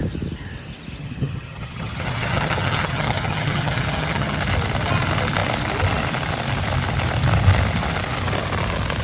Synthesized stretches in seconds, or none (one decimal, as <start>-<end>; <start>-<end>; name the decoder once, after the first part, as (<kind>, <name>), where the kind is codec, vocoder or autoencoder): 1.0-4.4 (vocoder, HiFi-GAN)